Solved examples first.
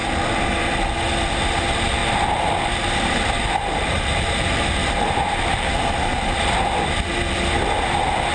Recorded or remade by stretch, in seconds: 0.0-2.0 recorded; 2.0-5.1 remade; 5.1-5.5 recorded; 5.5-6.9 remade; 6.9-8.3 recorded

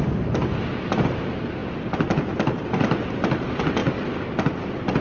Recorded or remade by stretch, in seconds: 0.0-5.0 recorded

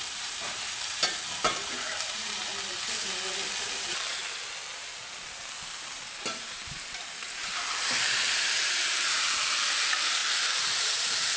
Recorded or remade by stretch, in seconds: 0.0-2.5 remade; 2.5-3.7 recorded; 3.7-4.2 remade; 4.2-5.4 recorded; 5.4-11.4 remade